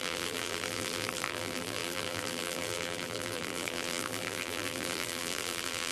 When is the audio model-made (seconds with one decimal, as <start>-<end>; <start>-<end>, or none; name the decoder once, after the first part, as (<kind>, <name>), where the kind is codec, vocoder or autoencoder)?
0.0-5.9 (vocoder, BigVGAN v2)